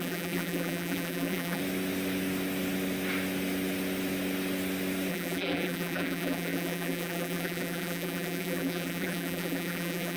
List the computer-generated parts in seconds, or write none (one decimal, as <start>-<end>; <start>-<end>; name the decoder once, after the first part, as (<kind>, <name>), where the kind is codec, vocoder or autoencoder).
0.0-1.6 (vocoder, BigVGAN v2); 5.1-10.2